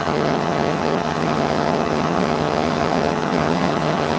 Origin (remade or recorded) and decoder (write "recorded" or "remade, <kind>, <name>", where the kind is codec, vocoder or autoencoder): remade, vocoder, HiFi-GAN